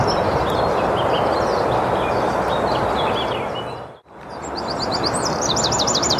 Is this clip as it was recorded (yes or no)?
yes